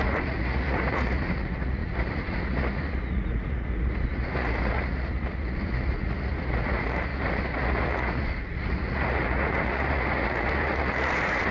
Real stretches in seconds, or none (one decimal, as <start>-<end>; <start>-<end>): none